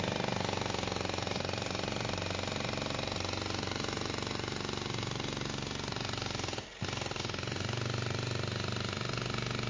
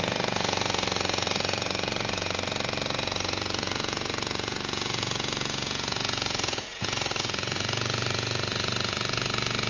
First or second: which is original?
first